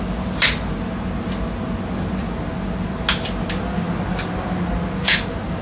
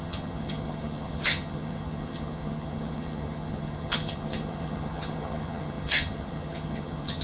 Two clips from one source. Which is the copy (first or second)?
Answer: second